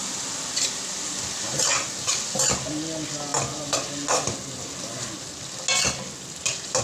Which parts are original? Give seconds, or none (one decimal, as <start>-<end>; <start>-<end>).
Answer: 0.0-6.8